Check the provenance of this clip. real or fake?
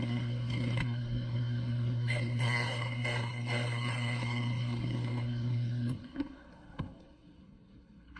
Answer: fake